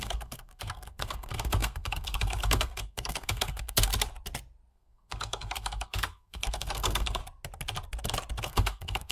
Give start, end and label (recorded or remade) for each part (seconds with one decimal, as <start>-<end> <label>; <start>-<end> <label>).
0.0-3.9 remade; 3.9-4.7 recorded; 4.7-7.2 remade; 7.2-8.4 recorded; 8.4-9.1 remade